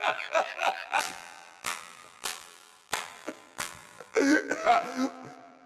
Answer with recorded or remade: remade